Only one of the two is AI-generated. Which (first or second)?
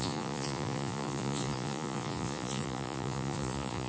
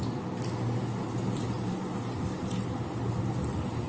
first